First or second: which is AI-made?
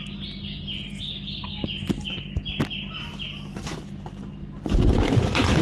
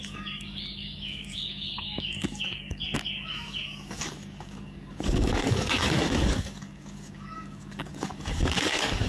second